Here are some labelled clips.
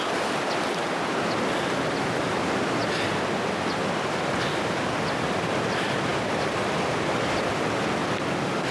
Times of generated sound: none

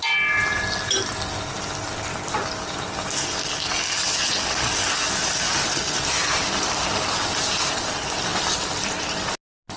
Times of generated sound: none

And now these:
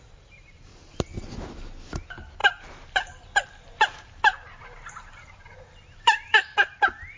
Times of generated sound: 0.0-0.7 (vocoder, BigVGAN v2); 1.9-7.2

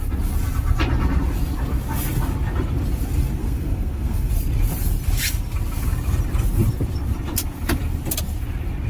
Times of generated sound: 3.4-4.3 (codec, SNAC)